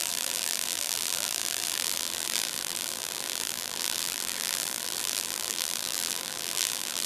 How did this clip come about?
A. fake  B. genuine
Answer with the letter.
A